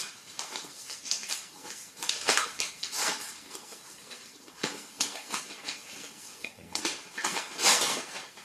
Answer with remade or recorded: remade